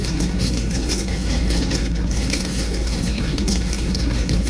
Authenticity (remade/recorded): remade